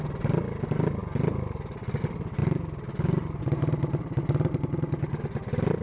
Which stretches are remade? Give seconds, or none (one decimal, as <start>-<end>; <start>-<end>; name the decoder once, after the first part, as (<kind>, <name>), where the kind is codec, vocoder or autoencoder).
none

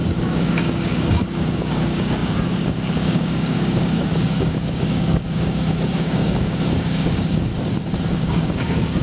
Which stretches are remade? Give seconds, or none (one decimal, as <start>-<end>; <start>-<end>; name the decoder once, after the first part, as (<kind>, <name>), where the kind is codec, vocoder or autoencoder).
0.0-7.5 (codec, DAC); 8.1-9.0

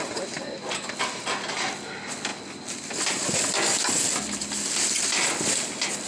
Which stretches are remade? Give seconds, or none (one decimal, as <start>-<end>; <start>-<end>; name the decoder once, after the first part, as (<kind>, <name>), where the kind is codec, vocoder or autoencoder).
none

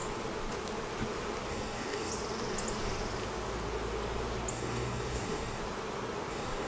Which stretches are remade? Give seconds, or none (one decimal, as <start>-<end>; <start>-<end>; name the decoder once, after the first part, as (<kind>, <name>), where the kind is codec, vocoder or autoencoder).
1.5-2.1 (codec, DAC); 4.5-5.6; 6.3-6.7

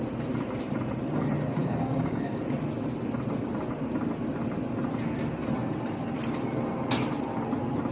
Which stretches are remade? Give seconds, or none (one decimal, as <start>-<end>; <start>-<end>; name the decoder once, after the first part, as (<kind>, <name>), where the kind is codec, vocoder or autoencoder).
1.6-2.4 (codec, DAC)